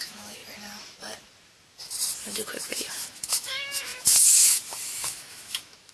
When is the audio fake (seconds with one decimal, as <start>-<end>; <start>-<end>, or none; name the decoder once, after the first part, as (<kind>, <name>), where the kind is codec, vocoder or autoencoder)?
0.0-0.4 (autoencoder, DAC-VAE); 2.9-5.9